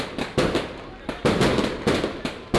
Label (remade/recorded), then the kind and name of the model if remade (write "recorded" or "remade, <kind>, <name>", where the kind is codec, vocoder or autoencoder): recorded